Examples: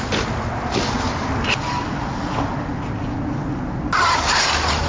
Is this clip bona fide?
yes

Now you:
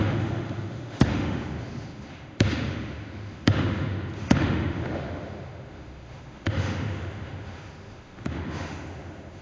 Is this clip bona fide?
no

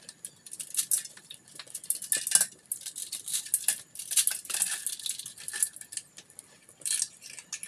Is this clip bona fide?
yes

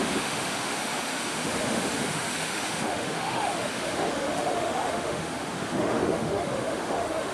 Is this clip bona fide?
no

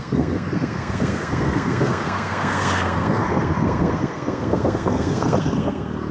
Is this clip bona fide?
no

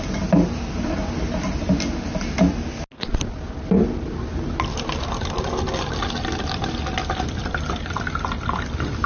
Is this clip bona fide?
yes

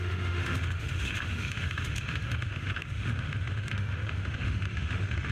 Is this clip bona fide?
no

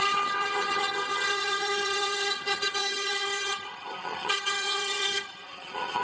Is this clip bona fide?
no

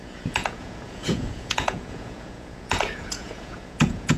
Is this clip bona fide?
no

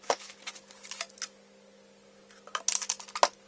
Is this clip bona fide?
yes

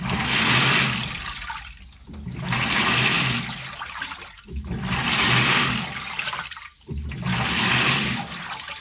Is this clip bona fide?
yes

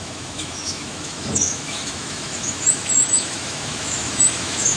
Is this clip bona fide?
no